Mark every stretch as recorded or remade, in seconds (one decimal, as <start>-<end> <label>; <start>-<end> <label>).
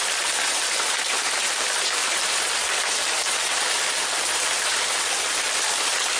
0.0-2.0 remade; 2.0-4.4 recorded; 4.4-6.2 remade